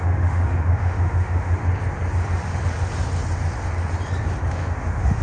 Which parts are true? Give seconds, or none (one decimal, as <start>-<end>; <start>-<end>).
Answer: 1.6-4.5